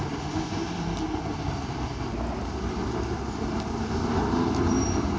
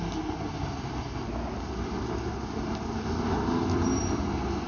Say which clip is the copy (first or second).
first